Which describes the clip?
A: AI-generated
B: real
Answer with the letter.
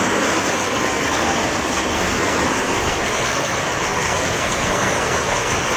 A